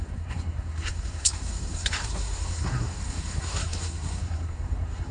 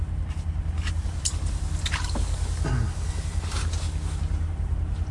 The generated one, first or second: first